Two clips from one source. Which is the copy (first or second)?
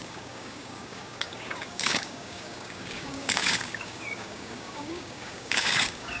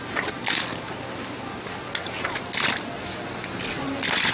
first